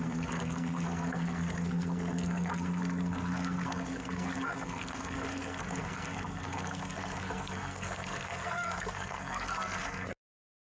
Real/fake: fake